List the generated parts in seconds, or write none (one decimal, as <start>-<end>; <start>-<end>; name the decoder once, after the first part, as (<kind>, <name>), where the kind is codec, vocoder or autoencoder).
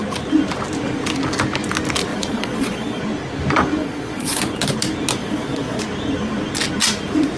2.1-3.0 (vocoder, Vocos); 3.8-4.4; 5.2-5.8